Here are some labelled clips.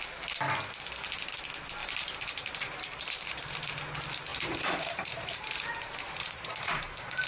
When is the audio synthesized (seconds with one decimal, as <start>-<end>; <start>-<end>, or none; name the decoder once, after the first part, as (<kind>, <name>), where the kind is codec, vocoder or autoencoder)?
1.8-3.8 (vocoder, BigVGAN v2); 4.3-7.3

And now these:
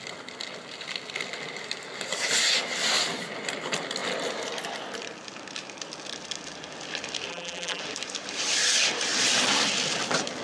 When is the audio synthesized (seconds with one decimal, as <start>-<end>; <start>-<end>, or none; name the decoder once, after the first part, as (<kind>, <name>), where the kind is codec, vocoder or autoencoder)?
7.3-7.8 (vocoder, BigVGAN v2)

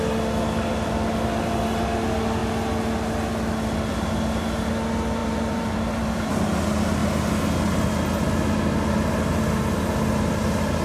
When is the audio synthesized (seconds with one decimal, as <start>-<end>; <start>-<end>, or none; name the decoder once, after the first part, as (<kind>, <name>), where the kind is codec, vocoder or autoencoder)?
5.2-6.6 (vocoder, BigVGAN v2)